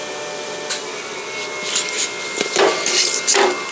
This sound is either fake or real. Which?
real